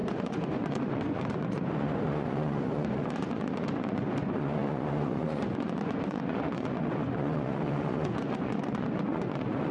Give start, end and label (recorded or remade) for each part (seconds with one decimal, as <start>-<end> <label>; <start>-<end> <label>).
0.0-9.7 remade

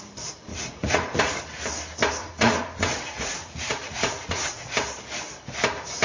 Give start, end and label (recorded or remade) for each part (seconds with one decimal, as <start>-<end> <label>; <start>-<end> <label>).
0.0-0.5 recorded; 0.5-1.2 remade; 1.2-2.2 recorded; 2.2-4.6 remade; 4.6-6.0 recorded